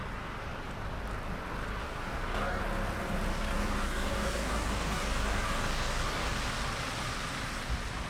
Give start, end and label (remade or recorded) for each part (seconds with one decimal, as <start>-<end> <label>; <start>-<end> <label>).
0.0-1.8 recorded; 1.8-2.6 remade; 2.6-3.3 recorded; 3.3-6.4 remade; 6.4-8.1 recorded